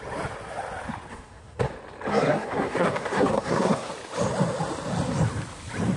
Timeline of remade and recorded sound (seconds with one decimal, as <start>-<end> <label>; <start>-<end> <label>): 0.0-1.1 recorded; 1.1-1.7 remade; 1.7-2.1 recorded; 2.1-3.9 remade; 3.9-6.0 recorded